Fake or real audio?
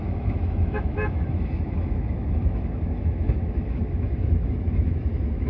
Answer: fake